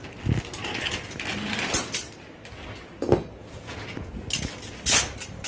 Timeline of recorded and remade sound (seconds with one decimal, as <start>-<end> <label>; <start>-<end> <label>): 0.0-3.4 recorded; 3.4-4.1 remade; 4.1-5.5 recorded